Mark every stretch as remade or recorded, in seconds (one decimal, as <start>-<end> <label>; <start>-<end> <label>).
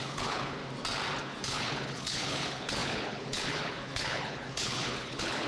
0.0-0.6 remade; 0.6-1.2 recorded; 1.2-5.5 remade